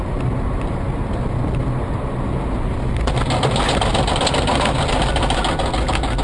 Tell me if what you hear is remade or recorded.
recorded